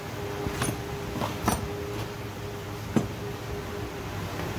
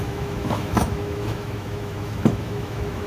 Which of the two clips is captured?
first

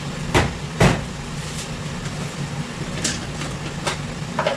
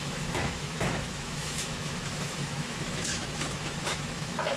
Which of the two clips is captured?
first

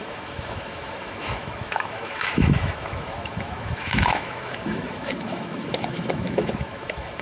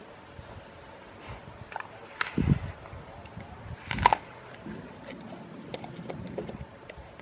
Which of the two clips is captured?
second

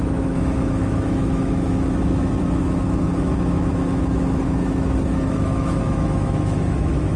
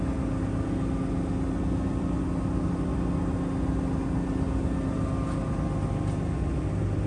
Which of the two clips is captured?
second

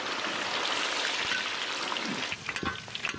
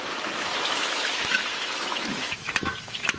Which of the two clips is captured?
first